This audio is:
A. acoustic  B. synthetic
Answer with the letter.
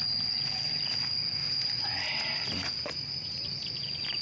A